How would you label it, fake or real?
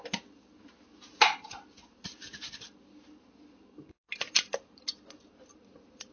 real